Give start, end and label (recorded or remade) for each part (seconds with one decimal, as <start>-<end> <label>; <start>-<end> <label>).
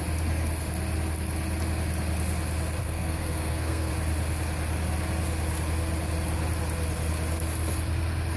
0.0-2.8 recorded; 2.8-3.9 remade; 3.9-8.4 recorded